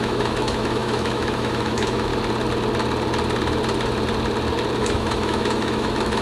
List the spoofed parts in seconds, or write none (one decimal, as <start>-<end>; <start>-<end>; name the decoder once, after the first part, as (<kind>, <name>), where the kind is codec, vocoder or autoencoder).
0.0-2.1 (autoencoder, DAC-VAE); 4.8-6.2